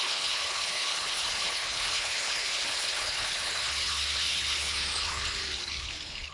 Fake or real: fake